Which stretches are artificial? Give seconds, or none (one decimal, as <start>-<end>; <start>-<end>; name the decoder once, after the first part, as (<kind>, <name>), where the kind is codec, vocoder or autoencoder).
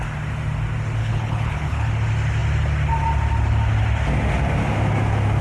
1.0-1.9 (codec, HILCodec)